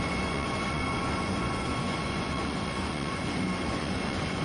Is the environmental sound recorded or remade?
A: remade